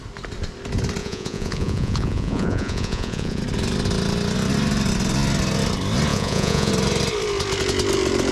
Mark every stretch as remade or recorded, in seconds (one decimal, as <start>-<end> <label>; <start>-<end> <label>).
0.0-1.0 recorded; 1.0-3.4 remade; 3.4-6.1 recorded; 6.1-6.7 remade; 6.7-8.3 recorded